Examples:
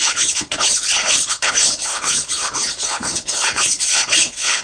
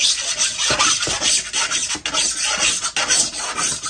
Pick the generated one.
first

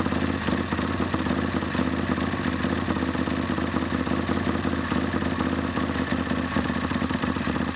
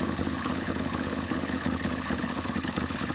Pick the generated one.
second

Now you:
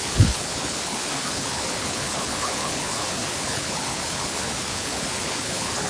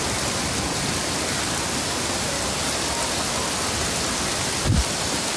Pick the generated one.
first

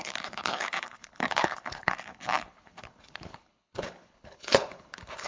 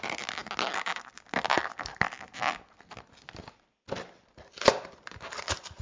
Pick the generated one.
first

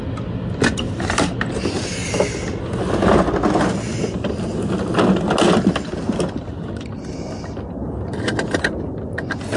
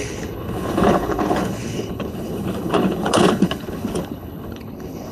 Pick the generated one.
second